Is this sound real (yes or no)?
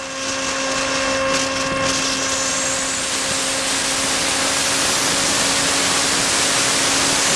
yes